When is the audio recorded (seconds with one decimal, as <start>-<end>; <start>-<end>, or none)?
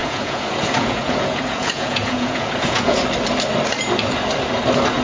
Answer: 3.0-5.0